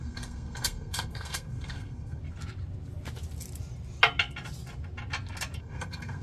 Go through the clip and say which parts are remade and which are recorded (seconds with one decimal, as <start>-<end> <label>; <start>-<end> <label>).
0.0-2.2 remade; 2.2-5.6 recorded; 5.6-6.2 remade